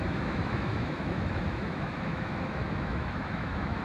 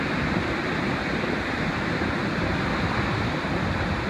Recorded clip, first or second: second